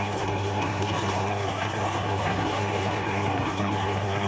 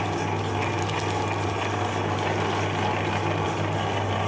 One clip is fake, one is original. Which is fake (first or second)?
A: first